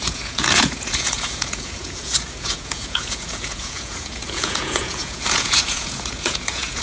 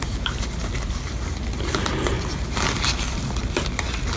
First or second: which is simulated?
first